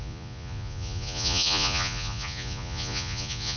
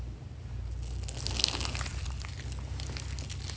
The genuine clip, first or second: second